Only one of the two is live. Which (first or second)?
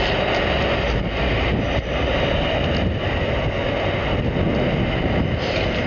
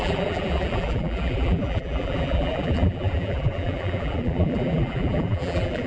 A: first